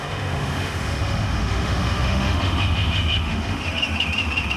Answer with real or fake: fake